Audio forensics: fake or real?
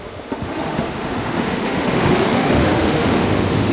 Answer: fake